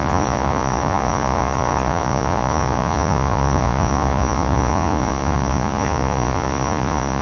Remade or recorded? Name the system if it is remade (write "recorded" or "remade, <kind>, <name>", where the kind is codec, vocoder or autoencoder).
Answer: remade, vocoder, Vocos